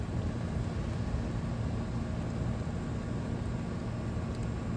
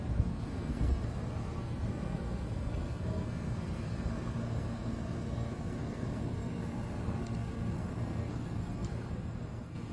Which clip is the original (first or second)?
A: first